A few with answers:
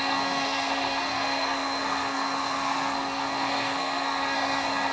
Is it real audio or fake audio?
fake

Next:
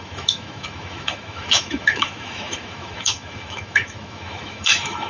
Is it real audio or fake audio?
fake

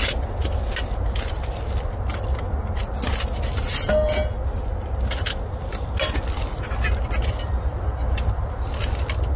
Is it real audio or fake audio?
real